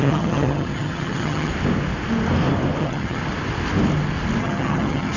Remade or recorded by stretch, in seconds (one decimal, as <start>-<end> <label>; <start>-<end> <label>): 0.0-1.5 remade; 1.5-2.8 recorded; 2.8-3.2 remade; 3.2-4.4 recorded; 4.4-5.2 remade